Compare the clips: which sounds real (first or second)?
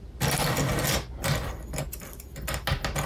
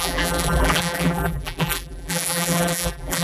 first